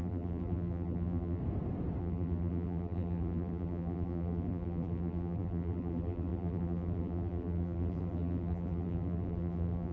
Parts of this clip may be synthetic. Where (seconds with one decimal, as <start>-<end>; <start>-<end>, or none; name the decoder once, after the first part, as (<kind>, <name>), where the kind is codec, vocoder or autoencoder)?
0.0-1.4 (vocoder, BigVGAN v2); 2.0-9.9

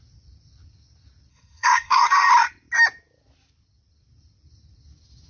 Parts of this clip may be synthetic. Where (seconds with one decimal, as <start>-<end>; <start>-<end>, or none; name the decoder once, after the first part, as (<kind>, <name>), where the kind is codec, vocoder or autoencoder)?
1.3-2.3 (codec, SNAC)